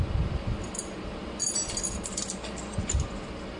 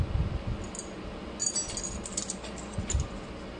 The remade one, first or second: first